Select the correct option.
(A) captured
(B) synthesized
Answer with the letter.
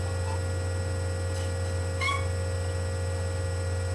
A